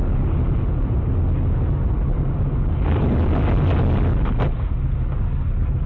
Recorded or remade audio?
recorded